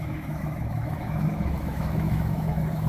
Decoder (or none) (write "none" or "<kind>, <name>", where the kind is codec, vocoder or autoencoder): autoencoder, DAC-VAE